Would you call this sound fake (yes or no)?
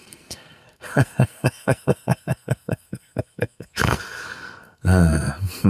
yes